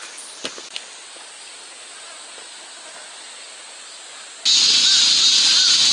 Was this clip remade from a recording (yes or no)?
no